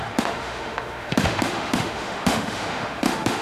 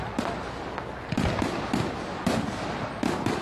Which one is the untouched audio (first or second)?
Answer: second